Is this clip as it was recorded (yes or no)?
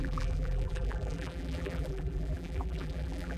no